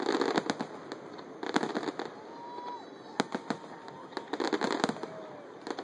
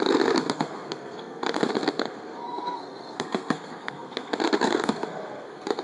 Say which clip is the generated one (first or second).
second